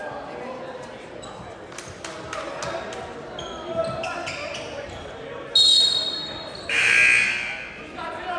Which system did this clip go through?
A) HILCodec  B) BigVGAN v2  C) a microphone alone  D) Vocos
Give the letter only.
C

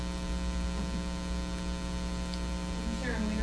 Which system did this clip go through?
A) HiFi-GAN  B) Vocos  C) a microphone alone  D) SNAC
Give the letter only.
C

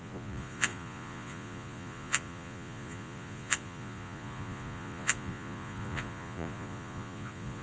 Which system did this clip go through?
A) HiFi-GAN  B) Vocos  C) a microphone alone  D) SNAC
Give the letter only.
B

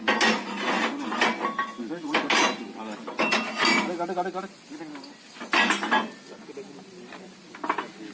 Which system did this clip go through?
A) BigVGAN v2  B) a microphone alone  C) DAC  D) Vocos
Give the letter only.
B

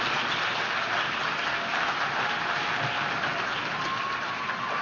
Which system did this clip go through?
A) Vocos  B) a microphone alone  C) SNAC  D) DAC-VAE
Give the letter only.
B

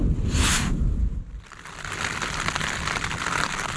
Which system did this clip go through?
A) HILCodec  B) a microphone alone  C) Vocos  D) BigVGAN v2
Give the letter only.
B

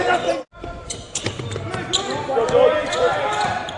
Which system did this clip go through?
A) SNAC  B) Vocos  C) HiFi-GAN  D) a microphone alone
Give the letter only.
D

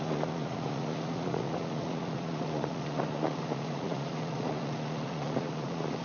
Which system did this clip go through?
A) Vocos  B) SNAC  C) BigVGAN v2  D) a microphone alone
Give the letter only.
A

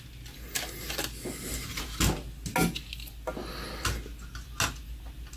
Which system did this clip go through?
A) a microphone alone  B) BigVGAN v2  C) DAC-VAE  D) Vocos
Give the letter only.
A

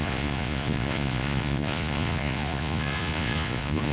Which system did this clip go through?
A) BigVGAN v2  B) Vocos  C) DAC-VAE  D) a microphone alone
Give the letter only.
B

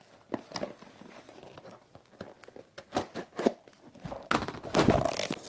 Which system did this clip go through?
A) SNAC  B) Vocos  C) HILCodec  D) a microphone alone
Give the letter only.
D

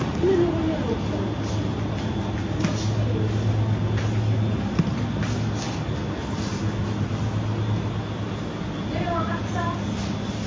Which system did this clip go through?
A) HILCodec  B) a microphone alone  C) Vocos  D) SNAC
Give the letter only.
B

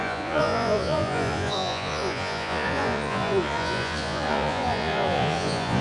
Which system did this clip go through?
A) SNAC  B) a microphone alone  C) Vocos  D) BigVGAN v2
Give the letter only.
C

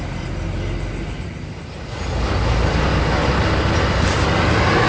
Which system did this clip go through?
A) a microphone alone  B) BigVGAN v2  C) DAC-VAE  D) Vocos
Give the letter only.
A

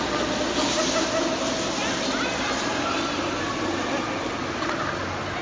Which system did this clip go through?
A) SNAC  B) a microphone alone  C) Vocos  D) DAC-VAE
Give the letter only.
B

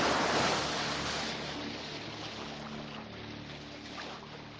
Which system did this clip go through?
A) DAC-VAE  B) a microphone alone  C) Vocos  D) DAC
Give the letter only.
B